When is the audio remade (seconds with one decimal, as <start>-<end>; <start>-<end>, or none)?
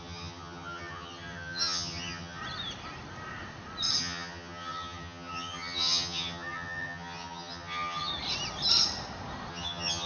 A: 0.0-2.4; 4.0-8.1; 9.5-10.1